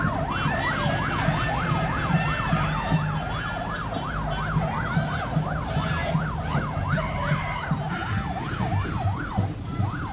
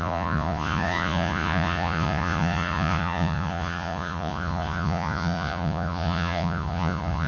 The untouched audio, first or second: first